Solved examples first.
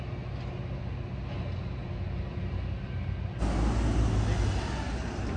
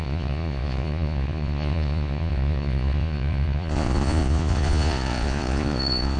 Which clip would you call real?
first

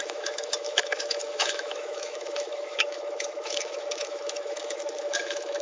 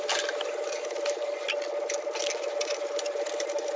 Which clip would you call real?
second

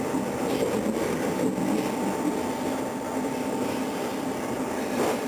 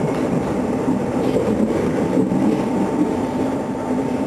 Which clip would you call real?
first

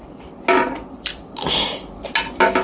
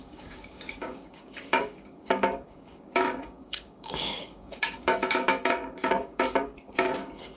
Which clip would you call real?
first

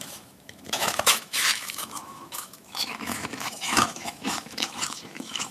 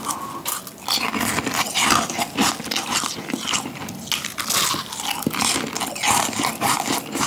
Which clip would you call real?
second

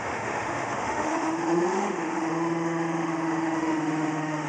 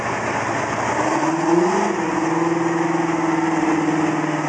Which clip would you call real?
second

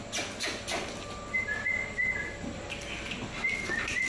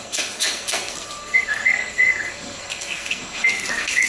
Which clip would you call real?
first